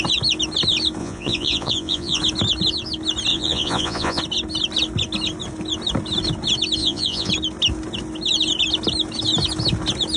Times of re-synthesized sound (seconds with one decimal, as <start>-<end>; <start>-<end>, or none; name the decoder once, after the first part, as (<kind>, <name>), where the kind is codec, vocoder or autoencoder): 1.0-2.2 (vocoder, Vocos); 3.3-4.2; 6.8-7.3